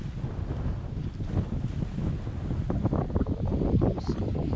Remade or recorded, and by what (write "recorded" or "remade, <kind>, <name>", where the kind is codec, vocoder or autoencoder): recorded